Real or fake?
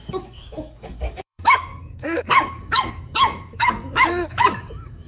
fake